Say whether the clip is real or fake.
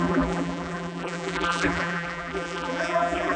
fake